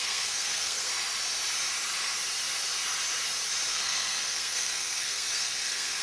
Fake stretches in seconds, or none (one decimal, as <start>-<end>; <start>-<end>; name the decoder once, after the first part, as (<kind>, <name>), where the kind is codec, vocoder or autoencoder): 0.0-0.9 (codec, SNAC); 3.7-6.0